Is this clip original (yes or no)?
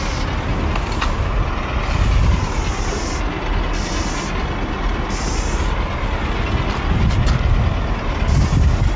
yes